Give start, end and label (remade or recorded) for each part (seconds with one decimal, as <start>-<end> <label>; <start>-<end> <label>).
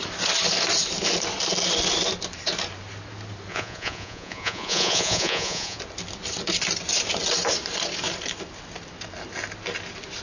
0.0-3.5 recorded; 3.5-5.8 remade; 5.8-10.2 recorded